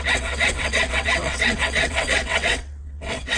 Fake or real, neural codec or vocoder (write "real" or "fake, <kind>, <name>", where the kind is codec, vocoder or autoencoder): fake, vocoder, WaveNeXt